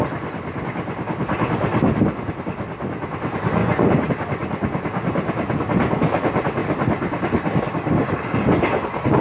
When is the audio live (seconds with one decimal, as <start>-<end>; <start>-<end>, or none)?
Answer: 0.0-3.6; 4.1-9.2